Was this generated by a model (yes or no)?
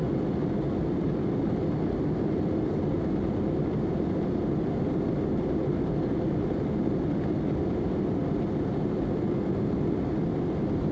no